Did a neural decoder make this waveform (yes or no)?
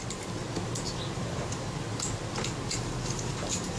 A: no